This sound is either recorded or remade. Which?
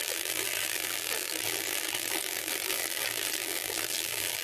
remade